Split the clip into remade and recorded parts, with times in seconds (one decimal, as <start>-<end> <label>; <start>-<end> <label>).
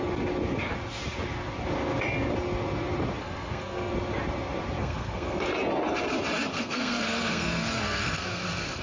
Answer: 0.0-3.2 recorded; 3.2-3.9 remade; 3.9-4.8 recorded; 4.8-5.5 remade; 5.5-6.5 recorded; 6.5-8.8 remade